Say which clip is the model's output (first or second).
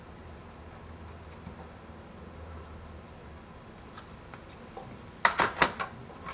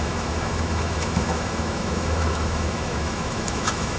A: second